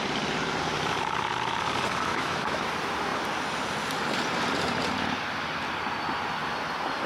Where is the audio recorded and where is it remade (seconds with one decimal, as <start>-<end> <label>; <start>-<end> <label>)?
0.0-2.1 recorded; 2.1-2.7 remade; 2.7-7.1 recorded